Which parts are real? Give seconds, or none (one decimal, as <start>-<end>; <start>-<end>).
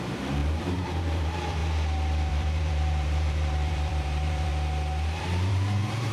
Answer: 1.6-2.3; 4.5-5.2